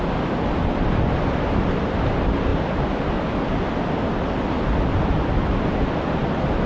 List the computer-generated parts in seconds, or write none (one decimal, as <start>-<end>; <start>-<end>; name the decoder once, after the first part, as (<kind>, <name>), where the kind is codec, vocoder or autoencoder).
0.0-2.5 (vocoder, BigVGAN v2); 5.6-6.7